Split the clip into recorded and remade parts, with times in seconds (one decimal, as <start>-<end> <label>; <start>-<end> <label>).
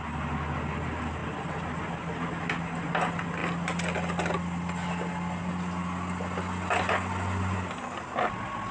0.0-8.7 recorded